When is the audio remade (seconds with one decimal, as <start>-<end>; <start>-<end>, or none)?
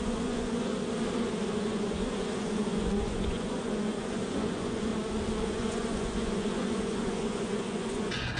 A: 0.0-0.7; 1.5-4.9; 5.4-8.4